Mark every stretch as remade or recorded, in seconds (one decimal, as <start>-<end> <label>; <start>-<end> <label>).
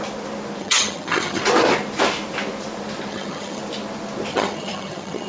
0.0-0.6 recorded; 0.6-1.4 remade; 1.4-3.1 recorded; 3.1-3.6 remade; 3.6-4.3 recorded; 4.3-5.3 remade